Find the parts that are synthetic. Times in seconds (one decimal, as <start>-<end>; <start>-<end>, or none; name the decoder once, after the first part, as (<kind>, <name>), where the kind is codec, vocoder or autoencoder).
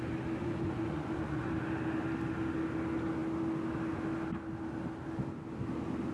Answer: 0.4-1.5 (vocoder, Vocos)